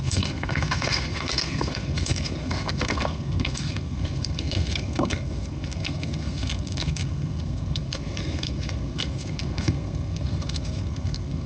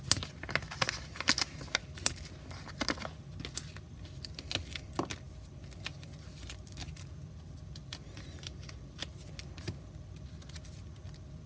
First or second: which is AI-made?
first